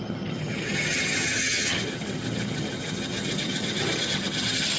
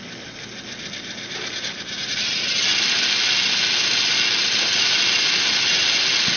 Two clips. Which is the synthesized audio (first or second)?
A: first